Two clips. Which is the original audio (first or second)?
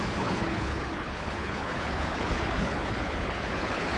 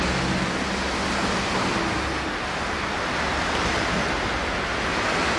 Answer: second